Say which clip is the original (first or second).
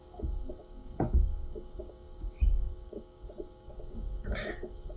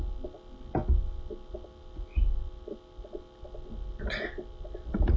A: second